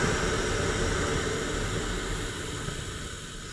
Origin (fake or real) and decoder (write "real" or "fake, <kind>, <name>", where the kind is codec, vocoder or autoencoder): real